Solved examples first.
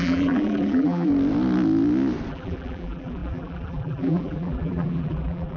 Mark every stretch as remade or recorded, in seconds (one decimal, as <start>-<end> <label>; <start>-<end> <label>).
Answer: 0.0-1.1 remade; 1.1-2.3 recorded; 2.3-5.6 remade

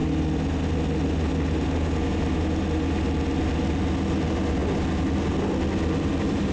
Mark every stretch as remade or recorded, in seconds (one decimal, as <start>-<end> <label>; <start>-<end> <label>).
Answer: 0.0-6.5 recorded

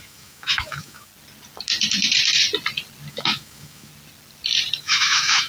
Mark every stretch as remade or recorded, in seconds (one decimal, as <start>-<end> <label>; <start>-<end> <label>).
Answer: 0.0-1.1 remade; 1.1-3.1 recorded; 3.1-3.9 remade; 3.9-4.8 recorded; 4.8-5.5 remade

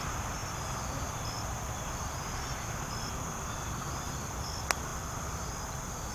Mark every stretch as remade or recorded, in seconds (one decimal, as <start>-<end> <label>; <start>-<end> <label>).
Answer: 0.0-6.1 recorded

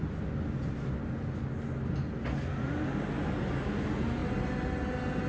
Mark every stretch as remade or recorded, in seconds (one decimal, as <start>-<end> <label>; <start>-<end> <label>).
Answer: 0.0-4.2 recorded; 4.2-5.3 remade

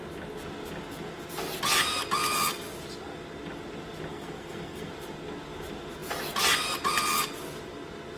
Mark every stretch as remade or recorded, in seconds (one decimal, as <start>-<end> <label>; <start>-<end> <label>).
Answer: 0.0-4.1 recorded; 4.1-4.9 remade; 4.9-8.2 recorded